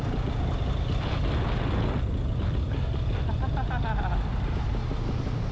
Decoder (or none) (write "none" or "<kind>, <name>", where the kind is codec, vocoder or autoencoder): none